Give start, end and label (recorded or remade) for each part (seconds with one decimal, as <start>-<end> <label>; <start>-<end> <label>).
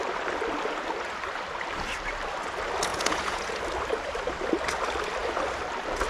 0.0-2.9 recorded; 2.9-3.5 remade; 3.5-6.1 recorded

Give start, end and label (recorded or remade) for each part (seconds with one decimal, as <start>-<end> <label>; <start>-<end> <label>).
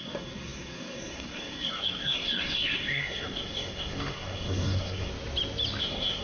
0.0-5.1 remade; 5.1-5.8 recorded; 5.8-6.2 remade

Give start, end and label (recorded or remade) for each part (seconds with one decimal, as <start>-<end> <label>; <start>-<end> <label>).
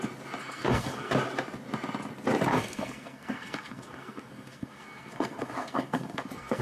0.0-0.4 recorded; 0.4-1.1 remade; 1.1-2.5 recorded; 2.5-6.6 remade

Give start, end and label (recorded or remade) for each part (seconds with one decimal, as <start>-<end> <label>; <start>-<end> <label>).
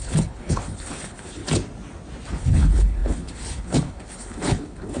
0.0-1.4 remade; 1.4-2.3 recorded; 2.3-5.0 remade